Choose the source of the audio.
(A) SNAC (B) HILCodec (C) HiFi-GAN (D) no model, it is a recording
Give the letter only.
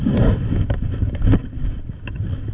D